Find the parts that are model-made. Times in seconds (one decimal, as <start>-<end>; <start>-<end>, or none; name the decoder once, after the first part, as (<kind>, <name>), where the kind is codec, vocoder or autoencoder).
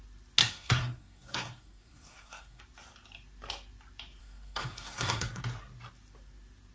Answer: 0.4-2.6 (codec, SNAC); 4.2-5.4